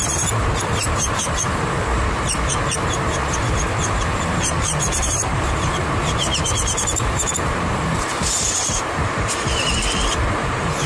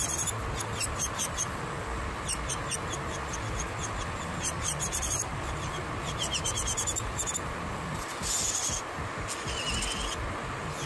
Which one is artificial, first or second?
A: first